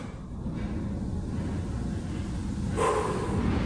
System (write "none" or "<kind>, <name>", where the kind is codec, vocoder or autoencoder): none